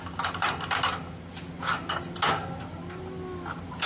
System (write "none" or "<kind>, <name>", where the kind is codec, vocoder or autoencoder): none